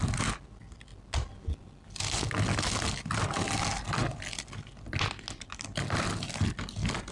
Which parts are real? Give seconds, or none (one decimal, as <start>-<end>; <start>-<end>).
0.0-7.1